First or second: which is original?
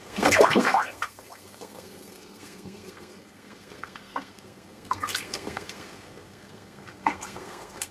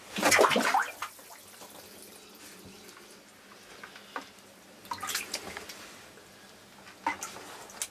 second